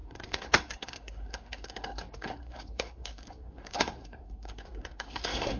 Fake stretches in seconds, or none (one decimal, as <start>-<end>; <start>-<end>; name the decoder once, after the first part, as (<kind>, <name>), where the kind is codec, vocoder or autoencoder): 0.0-5.6 (codec, SNAC)